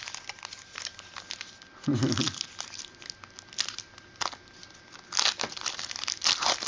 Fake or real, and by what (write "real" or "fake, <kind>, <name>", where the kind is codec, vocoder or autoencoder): real